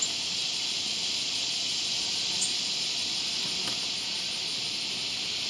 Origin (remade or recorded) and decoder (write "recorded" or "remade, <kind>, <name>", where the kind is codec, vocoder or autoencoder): recorded